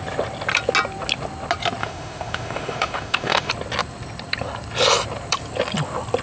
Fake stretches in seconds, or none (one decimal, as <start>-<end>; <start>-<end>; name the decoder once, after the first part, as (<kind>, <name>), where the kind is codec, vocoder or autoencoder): 1.8-3.5 (autoencoder, DAC-VAE)